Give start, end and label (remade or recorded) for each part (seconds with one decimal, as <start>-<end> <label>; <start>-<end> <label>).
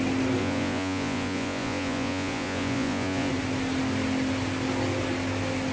0.0-0.4 recorded; 0.4-3.3 remade; 3.3-5.7 recorded